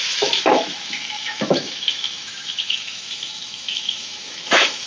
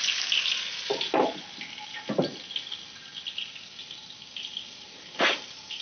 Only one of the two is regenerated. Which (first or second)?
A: first